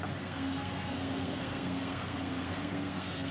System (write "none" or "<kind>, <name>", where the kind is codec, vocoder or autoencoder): codec, SNAC